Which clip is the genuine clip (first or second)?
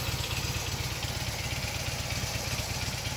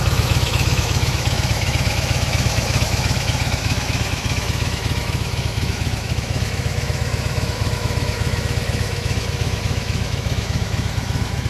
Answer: first